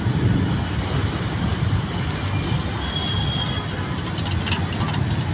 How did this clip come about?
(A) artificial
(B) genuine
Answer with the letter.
B